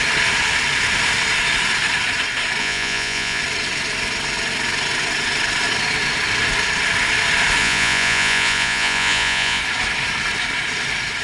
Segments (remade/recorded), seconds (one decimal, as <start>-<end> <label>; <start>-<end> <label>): 0.0-2.6 recorded; 2.6-3.4 remade; 3.4-7.6 recorded; 7.6-9.6 remade; 9.6-11.2 recorded